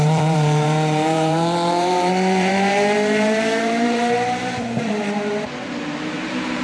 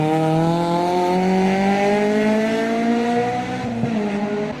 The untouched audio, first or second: second